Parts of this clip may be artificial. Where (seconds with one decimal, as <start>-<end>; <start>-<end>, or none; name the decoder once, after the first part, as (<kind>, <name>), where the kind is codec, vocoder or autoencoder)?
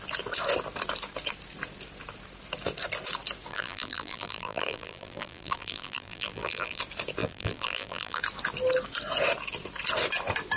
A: 3.5-6.8 (vocoder, BigVGAN v2); 7.2-8.2